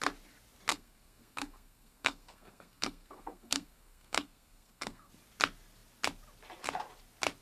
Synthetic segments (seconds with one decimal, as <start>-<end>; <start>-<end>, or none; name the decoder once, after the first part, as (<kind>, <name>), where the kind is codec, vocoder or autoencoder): 0.7-5.1 (codec, SNAC)